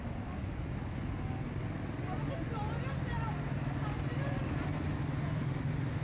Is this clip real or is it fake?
real